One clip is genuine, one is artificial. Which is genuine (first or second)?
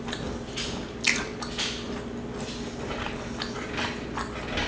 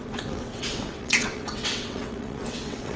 first